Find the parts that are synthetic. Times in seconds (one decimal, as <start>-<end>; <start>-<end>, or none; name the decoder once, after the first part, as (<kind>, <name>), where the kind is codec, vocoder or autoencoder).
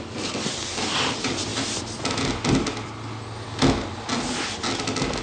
none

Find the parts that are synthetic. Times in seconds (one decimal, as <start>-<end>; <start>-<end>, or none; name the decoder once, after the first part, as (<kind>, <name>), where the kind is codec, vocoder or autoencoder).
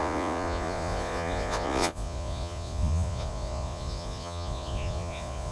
0.0-5.5 (vocoder, Vocos)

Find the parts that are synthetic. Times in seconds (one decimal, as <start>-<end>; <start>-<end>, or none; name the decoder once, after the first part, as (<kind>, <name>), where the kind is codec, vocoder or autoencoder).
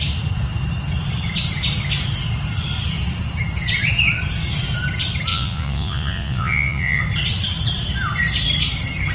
5.3-7.0 (vocoder, Vocos)